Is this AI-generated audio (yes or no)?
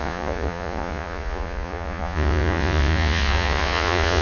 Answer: yes